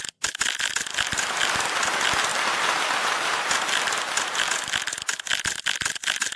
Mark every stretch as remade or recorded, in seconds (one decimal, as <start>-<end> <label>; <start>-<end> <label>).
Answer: 0.0-6.4 recorded